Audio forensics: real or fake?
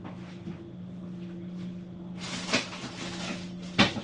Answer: real